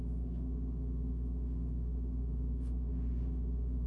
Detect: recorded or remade remade